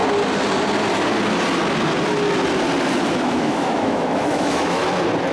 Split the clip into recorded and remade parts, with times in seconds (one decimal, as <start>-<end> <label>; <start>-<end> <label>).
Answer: 0.0-3.2 recorded; 3.2-4.8 remade; 4.8-5.3 recorded